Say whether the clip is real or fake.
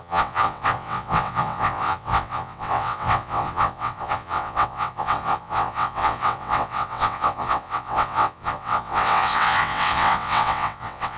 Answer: fake